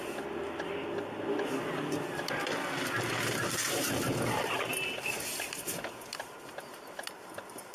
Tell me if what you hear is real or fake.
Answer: real